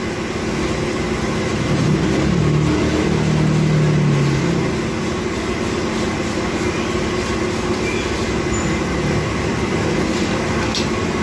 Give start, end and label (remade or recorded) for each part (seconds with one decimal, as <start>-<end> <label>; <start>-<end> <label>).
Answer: 0.0-1.5 recorded; 1.5-2.4 remade; 2.4-11.2 recorded